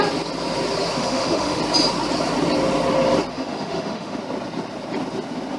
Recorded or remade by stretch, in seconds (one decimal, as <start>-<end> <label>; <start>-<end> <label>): 0.0-1.0 recorded; 1.0-1.6 remade; 1.6-3.3 recorded; 3.3-4.2 remade; 4.2-5.6 recorded